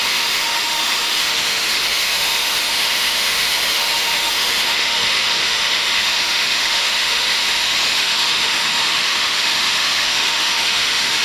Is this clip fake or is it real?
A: fake